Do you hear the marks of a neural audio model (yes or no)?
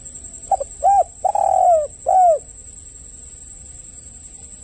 no